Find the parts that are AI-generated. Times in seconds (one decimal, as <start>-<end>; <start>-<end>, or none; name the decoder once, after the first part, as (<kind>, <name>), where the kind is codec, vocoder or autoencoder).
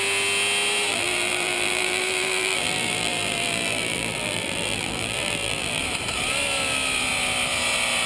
0.9-5.8 (vocoder, BigVGAN v2)